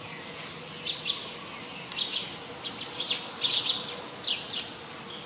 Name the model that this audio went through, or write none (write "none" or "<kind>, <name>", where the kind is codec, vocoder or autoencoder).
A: none